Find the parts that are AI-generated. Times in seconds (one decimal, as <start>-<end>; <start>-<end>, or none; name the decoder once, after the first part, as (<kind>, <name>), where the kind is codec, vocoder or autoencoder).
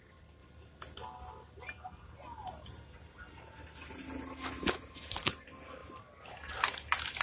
0.0-0.4 (vocoder, BigVGAN v2); 4.7-5.8